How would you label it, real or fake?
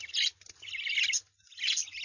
real